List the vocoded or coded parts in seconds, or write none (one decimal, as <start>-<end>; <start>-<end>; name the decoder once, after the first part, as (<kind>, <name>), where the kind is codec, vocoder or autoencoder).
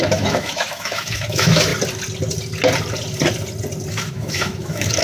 0.0-1.7 (autoencoder, DAC-VAE); 3.9-5.0